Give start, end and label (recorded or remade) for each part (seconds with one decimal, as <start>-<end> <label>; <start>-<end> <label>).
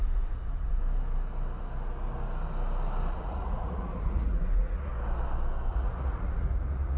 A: 0.0-0.8 remade; 0.8-3.1 recorded; 3.1-4.9 remade; 4.9-5.7 recorded; 5.7-7.0 remade